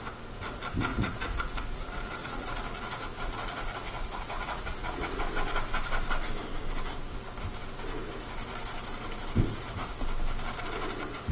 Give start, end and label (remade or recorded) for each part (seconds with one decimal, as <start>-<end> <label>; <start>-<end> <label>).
0.0-0.9 recorded; 0.9-5.2 remade; 5.2-11.3 recorded